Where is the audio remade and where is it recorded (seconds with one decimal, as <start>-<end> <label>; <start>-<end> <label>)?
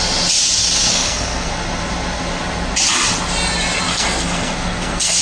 0.0-0.9 recorded; 0.9-1.5 remade; 1.5-3.9 recorded; 3.9-5.2 remade